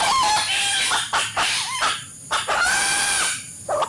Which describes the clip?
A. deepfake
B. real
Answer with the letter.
A